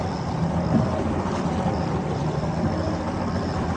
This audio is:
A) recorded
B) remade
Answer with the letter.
A